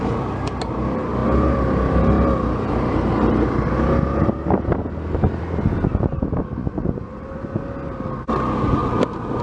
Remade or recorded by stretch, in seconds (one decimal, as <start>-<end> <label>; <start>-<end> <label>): 0.0-6.6 recorded; 6.6-7.6 remade; 7.6-9.4 recorded